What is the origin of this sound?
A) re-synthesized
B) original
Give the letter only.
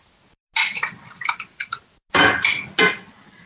B